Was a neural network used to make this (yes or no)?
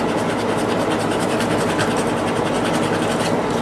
no